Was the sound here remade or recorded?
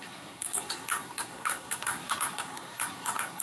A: remade